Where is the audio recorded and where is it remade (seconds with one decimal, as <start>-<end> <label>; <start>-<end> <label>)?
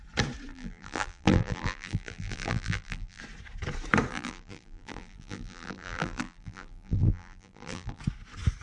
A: 0.0-0.5 recorded; 0.5-3.2 remade; 3.2-4.1 recorded; 4.1-8.0 remade; 8.0-8.6 recorded